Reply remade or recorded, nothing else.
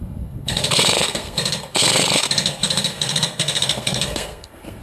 remade